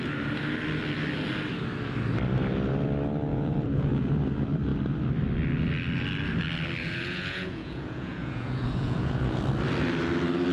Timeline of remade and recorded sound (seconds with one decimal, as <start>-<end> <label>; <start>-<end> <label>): 0.0-3.3 recorded; 3.3-4.1 remade; 4.1-6.8 recorded; 6.8-9.4 remade; 9.4-10.5 recorded

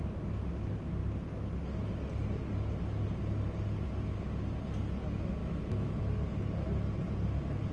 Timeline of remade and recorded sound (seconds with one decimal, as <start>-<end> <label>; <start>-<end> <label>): 0.0-5.4 recorded; 5.4-6.0 remade; 6.0-7.7 recorded